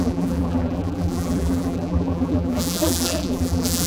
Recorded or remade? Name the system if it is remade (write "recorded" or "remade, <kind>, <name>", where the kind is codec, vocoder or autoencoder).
remade, vocoder, BigVGAN v2